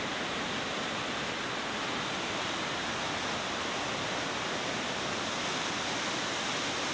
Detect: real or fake real